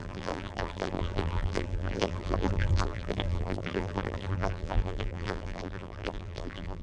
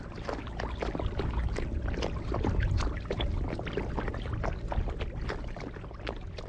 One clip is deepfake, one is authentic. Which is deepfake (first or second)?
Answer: first